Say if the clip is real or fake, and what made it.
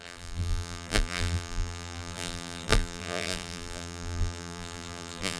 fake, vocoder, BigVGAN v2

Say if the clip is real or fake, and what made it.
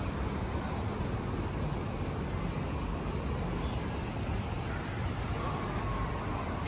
real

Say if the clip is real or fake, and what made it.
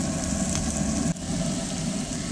real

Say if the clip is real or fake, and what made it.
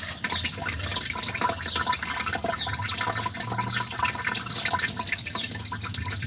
real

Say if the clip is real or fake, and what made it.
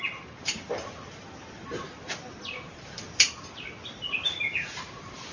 real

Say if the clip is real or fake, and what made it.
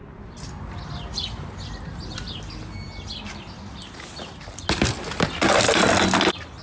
real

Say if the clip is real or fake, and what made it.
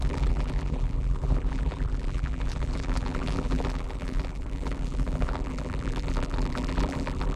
fake, vocoder, BigVGAN v2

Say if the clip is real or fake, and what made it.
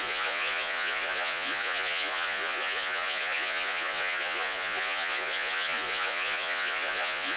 fake, vocoder, Vocos